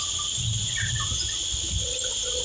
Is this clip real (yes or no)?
yes